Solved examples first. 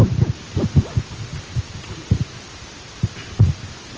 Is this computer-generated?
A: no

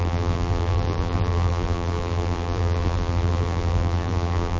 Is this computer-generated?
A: yes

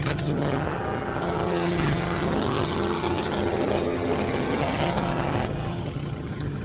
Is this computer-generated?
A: yes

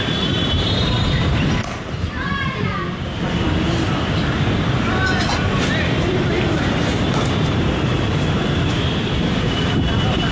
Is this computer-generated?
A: yes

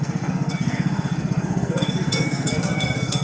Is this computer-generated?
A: yes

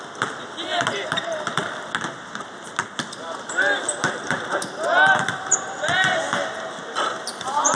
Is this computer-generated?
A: no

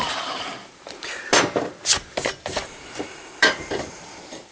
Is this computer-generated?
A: yes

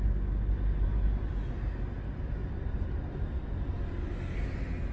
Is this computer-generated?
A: no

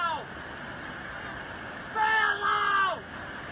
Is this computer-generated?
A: no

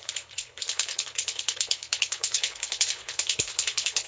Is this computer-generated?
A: yes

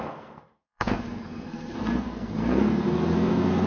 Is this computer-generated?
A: yes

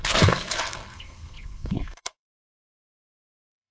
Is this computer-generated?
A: yes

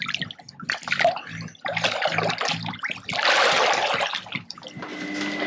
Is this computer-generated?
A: no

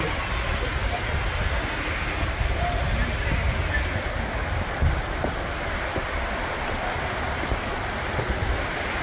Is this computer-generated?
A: no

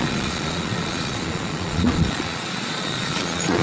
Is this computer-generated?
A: yes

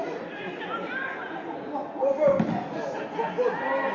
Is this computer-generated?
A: no